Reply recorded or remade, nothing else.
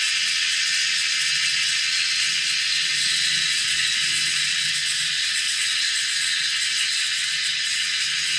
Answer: remade